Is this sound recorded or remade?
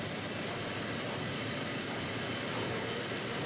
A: recorded